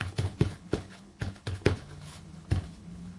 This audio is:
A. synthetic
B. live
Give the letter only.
A